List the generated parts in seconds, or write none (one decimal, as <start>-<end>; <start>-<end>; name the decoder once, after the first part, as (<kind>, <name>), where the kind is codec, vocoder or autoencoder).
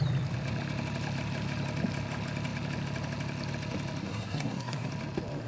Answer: 4.0-4.9 (codec, SNAC)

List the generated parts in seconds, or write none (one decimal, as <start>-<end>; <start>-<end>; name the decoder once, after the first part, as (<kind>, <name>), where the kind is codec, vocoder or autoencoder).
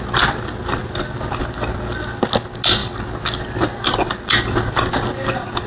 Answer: none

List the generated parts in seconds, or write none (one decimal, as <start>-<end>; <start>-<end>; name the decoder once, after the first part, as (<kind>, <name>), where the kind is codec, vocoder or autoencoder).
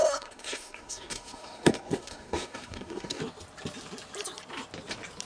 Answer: 0.0-3.2 (codec, SNAC)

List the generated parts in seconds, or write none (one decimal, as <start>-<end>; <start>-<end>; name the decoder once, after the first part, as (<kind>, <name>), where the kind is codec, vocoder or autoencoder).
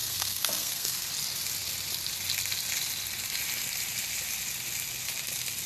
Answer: 0.0-1.1 (codec, SNAC)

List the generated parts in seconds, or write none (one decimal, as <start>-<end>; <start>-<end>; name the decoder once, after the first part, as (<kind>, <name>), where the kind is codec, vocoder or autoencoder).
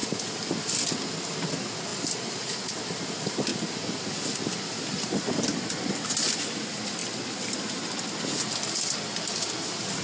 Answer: none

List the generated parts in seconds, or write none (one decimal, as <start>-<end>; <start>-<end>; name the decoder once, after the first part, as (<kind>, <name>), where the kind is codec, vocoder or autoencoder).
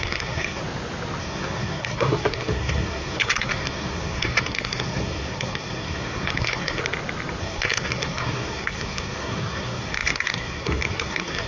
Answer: 0.0-0.6 (codec, SNAC); 1.2-6.8; 7.4-11.5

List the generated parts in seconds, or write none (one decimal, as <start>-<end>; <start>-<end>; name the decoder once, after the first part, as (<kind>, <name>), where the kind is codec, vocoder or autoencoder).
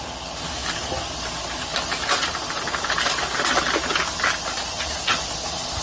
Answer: none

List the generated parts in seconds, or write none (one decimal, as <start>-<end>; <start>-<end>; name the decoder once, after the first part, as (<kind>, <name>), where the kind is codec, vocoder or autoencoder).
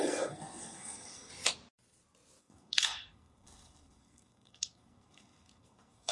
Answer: 0.0-1.3 (codec, SNAC); 2.4-6.1